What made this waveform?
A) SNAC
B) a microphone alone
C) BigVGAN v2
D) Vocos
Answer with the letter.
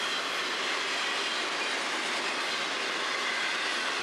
B